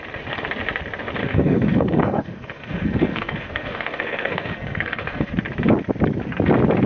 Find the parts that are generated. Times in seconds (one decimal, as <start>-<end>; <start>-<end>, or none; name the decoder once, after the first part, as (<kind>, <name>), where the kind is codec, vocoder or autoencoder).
1.2-5.3 (codec, SNAC)